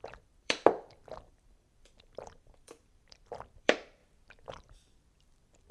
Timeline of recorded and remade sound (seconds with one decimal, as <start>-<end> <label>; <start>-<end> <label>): 0.0-4.0 remade; 4.0-4.5 recorded; 4.5-5.7 remade